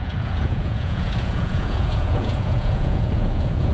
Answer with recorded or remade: remade